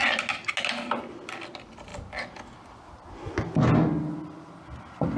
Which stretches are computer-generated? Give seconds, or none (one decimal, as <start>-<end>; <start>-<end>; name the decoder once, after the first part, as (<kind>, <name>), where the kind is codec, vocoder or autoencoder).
none